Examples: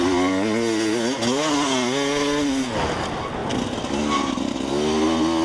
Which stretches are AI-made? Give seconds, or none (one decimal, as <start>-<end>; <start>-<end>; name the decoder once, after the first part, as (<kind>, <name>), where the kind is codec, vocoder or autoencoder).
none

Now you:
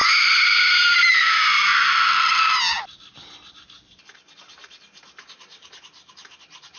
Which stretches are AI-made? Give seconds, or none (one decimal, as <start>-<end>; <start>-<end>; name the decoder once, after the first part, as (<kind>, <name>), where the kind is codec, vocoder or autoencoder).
none

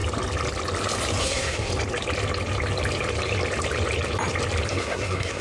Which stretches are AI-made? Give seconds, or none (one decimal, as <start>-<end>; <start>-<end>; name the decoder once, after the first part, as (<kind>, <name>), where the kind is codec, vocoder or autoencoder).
1.2-1.7 (codec, SNAC); 4.7-5.4

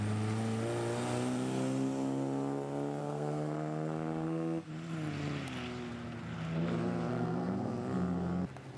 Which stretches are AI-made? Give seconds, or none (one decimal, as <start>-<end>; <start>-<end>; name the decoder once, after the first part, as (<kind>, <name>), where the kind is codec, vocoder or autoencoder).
3.0-4.7 (codec, SNAC); 7.1-7.7

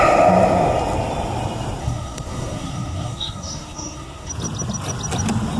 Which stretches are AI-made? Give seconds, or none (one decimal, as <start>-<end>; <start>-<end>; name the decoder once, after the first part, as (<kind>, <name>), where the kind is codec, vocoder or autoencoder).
1.8-4.3 (codec, SNAC)

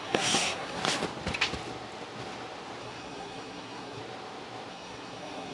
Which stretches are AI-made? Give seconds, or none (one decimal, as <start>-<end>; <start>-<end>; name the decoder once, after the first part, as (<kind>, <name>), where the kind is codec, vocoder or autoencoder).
0.0-0.8 (codec, SNAC); 2.8-4.0; 4.7-5.5

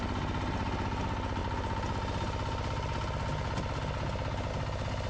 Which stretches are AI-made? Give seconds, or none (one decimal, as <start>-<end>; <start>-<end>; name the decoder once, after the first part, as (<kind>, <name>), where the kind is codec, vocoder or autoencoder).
none